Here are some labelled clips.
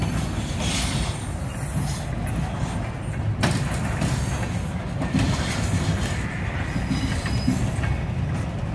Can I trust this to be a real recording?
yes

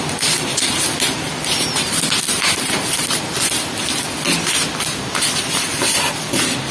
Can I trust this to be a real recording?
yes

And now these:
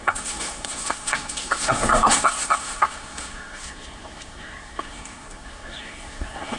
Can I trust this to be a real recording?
no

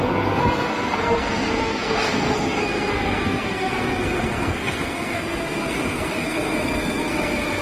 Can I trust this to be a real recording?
no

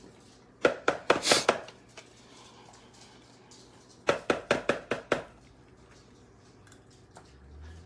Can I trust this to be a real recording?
yes